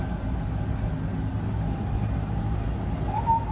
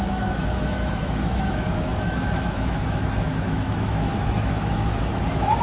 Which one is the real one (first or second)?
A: first